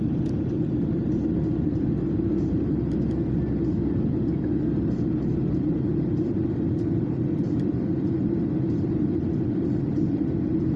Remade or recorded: remade